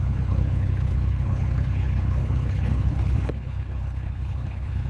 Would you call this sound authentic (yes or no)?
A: no